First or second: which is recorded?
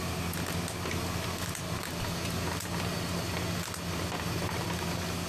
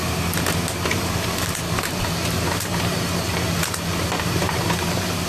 first